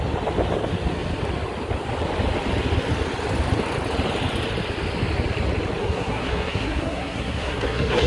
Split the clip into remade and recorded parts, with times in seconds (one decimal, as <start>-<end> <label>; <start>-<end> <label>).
0.0-5.8 recorded; 5.8-8.1 remade